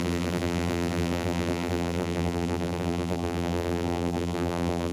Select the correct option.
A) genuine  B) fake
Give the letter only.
B